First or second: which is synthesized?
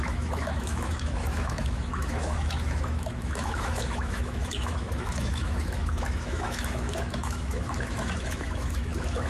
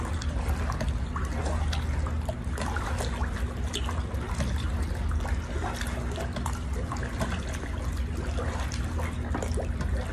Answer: first